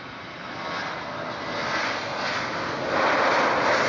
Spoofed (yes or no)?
no